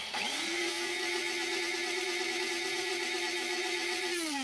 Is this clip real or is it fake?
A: fake